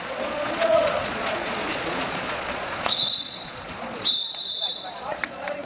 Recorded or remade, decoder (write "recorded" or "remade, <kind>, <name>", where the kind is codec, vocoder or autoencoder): remade, vocoder, Vocos